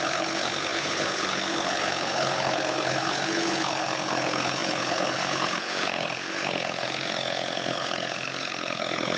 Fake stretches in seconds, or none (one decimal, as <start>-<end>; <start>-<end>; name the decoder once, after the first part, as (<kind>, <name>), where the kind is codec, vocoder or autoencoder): 0.0-9.2 (codec, HILCodec)